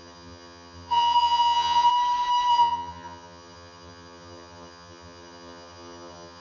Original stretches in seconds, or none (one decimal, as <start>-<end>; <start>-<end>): 1.9-2.5